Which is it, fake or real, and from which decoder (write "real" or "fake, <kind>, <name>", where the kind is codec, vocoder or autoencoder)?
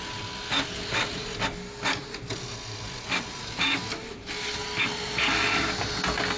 real